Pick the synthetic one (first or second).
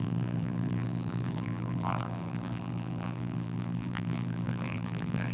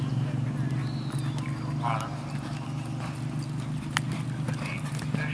first